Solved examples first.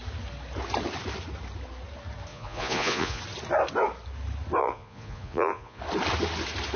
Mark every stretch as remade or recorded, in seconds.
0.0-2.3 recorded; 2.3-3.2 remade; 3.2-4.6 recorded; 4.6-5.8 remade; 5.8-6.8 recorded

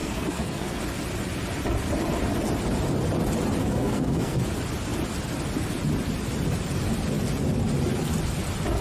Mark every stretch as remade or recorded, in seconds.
0.0-0.8 remade; 0.8-3.6 recorded; 3.6-4.4 remade; 4.4-8.8 recorded

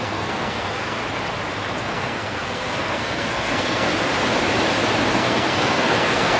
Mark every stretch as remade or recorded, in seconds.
0.0-1.0 remade; 1.0-1.8 recorded; 1.8-3.9 remade; 3.9-5.1 recorded; 5.1-6.4 remade

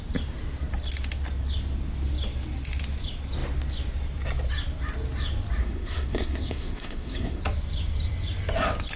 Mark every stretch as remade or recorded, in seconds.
0.0-5.6 recorded; 5.6-7.4 remade; 7.4-9.0 recorded

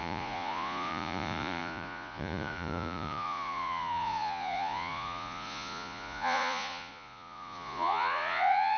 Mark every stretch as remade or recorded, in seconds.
0.0-8.8 remade